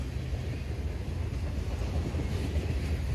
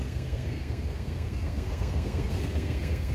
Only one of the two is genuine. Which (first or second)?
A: first